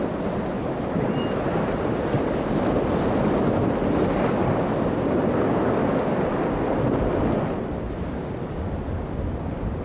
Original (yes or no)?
yes